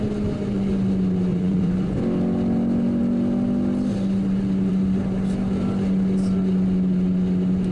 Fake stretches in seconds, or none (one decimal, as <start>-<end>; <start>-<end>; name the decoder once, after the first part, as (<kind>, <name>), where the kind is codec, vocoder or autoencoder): 1.3-2.0 (vocoder, Vocos)